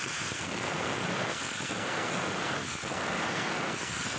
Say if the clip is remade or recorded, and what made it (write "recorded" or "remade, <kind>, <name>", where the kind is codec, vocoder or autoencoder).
remade, codec, SNAC